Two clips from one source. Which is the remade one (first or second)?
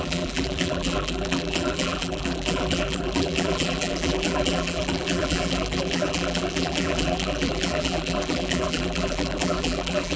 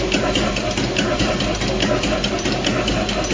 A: first